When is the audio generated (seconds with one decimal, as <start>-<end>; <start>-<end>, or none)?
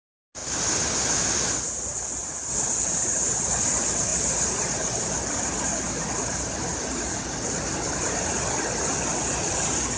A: none